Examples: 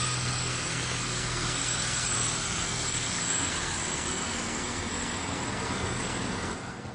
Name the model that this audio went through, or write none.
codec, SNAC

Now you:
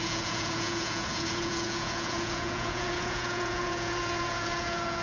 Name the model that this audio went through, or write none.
vocoder, Vocos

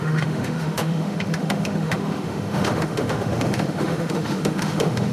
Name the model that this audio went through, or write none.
autoencoder, DAC-VAE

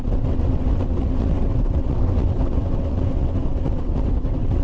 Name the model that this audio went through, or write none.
vocoder, WaveNeXt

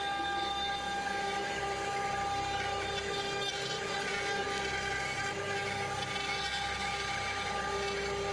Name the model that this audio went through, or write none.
none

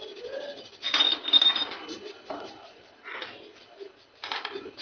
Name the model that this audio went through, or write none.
none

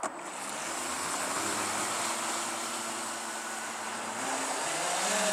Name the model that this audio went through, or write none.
none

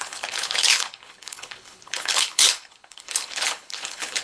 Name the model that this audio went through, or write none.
codec, HILCodec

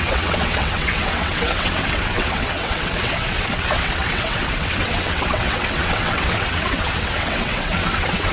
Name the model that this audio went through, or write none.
vocoder, WaveNeXt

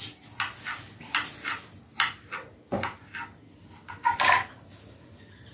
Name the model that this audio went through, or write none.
none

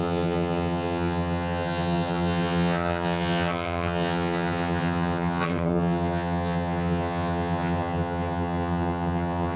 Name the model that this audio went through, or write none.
vocoder, HiFi-GAN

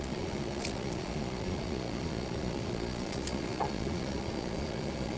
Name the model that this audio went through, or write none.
vocoder, Vocos